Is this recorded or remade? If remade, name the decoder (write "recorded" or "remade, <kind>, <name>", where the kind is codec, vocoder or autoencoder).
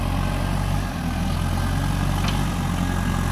recorded